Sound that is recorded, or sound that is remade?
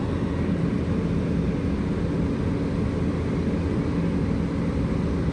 recorded